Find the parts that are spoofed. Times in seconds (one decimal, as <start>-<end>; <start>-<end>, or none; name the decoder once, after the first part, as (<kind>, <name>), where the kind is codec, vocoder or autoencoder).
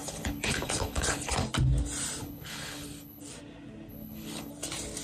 0.0-1.4 (codec, HILCodec); 2.2-3.2; 3.9-4.5